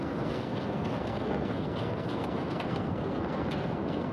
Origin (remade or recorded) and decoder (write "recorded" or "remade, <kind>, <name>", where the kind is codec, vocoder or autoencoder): remade, codec, SNAC